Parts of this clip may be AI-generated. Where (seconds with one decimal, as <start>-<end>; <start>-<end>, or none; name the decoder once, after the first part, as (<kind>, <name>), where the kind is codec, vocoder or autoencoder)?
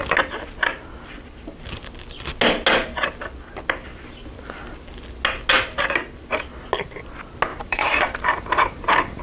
7.5-9.2 (vocoder, BigVGAN v2)